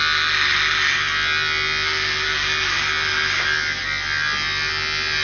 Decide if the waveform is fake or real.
real